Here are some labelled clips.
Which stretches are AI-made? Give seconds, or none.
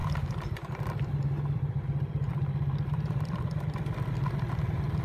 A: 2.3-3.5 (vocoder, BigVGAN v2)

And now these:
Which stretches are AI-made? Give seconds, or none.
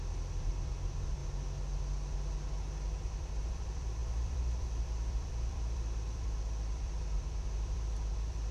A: 0.0-1.2 (vocoder, BigVGAN v2); 3.0-8.5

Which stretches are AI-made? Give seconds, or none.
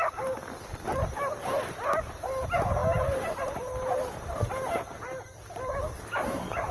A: 0.0-0.4 (vocoder, BigVGAN v2); 1.2-6.7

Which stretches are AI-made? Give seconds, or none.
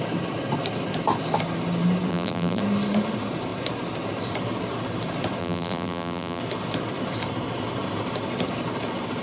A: 2.1-2.6 (vocoder, BigVGAN v2); 5.4-6.4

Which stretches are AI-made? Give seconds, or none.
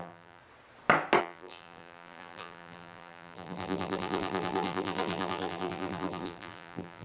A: 0.0-0.4 (vocoder, BigVGAN v2); 1.2-7.0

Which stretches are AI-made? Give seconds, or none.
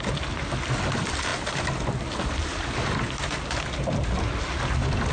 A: none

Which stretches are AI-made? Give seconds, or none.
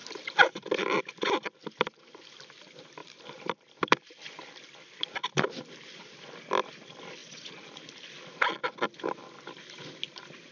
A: 0.0-1.0 (vocoder, BigVGAN v2); 3.0-4.0